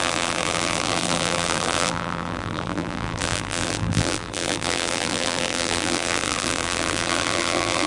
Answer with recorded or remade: remade